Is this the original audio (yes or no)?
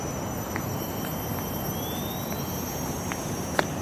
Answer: yes